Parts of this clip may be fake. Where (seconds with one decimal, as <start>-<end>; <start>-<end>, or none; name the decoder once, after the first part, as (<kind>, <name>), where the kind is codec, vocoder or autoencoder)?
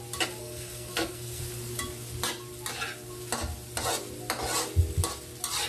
0.4-1.4 (codec, SNAC)